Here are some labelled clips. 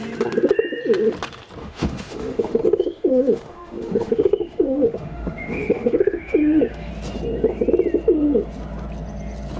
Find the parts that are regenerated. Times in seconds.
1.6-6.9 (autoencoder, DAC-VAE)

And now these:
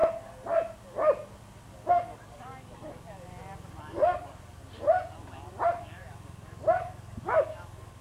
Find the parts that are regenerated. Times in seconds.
1.9-3.3 (codec, DAC); 3.8-4.6; 5.8-8.0

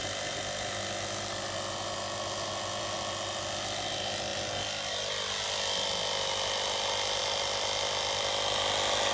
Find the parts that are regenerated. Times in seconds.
none